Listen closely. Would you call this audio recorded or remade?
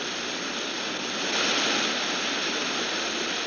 recorded